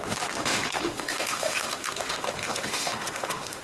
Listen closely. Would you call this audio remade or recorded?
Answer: remade